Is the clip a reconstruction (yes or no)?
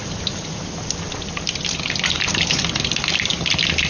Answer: no